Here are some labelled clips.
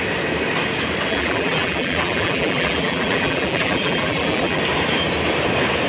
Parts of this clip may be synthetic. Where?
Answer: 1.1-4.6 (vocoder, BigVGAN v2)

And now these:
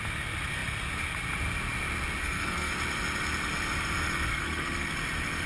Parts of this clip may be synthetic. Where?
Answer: 2.2-2.7 (codec, SNAC); 4.3-4.9

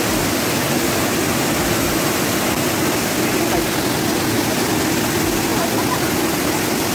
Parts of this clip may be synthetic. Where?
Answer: none

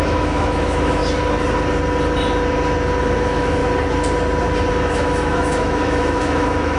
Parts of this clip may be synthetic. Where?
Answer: 0.0-1.0 (autoencoder, DAC-VAE); 3.0-3.6; 4.7-6.8

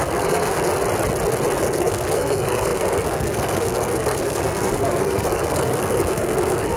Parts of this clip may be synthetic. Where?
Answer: 0.0-0.7 (codec, SNAC); 1.6-6.8

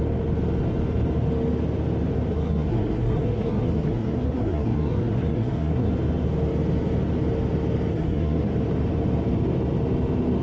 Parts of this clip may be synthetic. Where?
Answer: 2.3-5.9 (codec, SNAC); 7.9-8.5